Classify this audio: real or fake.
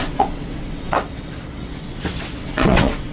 fake